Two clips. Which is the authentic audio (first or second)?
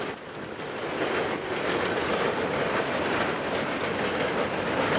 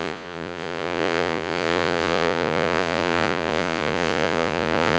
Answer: first